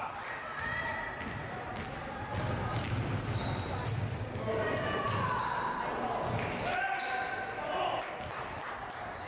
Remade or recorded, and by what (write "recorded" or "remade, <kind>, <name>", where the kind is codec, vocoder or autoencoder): recorded